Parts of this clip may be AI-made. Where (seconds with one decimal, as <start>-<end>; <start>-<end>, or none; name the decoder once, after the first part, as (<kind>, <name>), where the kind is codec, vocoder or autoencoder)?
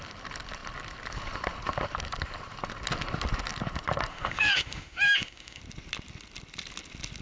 4.1-5.6 (autoencoder, DAC-VAE)